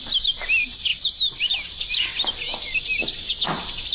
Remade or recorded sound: recorded